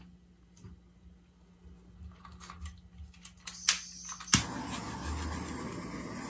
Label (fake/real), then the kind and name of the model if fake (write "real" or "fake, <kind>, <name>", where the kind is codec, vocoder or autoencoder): real